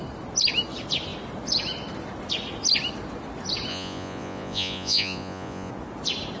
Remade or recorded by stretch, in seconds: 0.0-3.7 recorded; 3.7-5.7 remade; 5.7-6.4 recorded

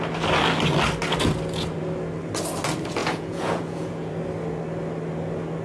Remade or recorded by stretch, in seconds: 0.0-3.0 recorded; 3.0-4.1 remade; 4.1-5.6 recorded

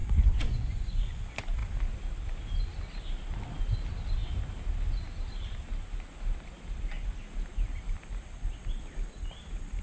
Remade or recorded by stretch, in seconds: 0.0-1.2 remade; 1.2-9.8 recorded

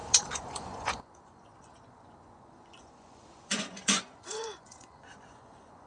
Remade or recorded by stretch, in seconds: 0.0-5.9 remade

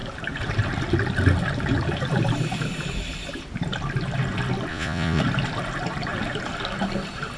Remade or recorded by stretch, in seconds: 0.0-4.7 recorded; 4.7-5.2 remade; 5.2-7.4 recorded

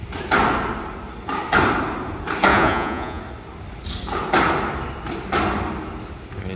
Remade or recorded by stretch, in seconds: 0.0-2.5 recorded; 2.5-3.2 remade; 3.2-6.6 recorded